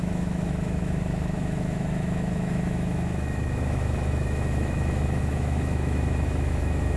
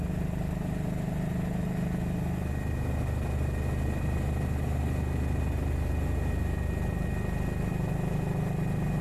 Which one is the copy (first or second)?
first